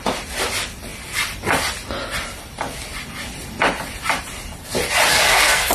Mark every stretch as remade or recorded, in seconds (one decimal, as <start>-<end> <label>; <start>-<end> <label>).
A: 0.0-5.1 recorded; 5.1-5.7 remade